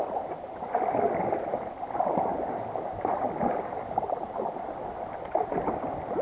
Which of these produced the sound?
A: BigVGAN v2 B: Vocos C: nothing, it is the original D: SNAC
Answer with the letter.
C